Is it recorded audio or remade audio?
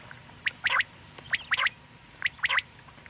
recorded